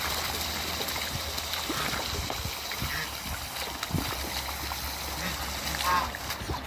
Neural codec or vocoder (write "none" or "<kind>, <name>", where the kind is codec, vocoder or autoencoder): none